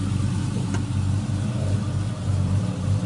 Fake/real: real